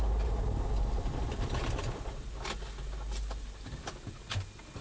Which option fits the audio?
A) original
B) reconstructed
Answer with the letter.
A